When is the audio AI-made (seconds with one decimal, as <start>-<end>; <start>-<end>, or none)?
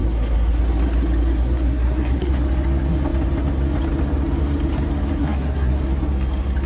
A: 0.0-0.6; 1.3-2.3; 5.2-5.8